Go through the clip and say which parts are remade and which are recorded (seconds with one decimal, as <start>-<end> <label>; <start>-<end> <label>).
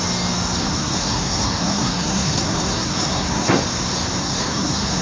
0.0-0.6 recorded; 0.6-3.6 remade; 3.6-4.2 recorded; 4.2-5.0 remade